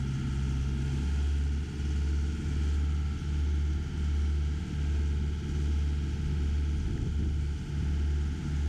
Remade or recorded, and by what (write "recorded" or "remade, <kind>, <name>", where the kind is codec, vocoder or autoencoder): recorded